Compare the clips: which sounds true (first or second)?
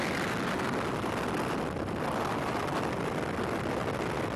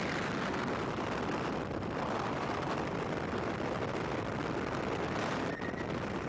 first